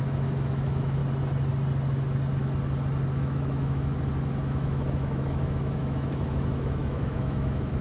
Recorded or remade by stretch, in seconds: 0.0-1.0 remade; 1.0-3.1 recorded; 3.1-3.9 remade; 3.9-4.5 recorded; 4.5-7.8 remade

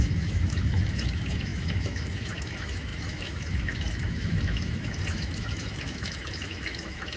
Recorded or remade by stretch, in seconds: 0.0-7.2 remade